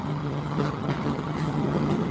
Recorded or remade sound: remade